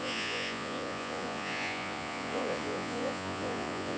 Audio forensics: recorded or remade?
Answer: remade